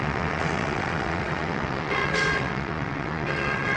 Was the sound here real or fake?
fake